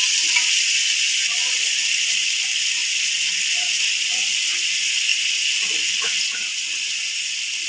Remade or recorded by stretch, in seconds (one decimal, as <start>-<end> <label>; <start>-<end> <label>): 0.0-7.7 recorded